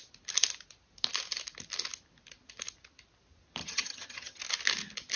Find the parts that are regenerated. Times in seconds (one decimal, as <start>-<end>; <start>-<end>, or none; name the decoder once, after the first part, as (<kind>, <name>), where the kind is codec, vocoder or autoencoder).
3.6-4.4 (vocoder, HiFi-GAN)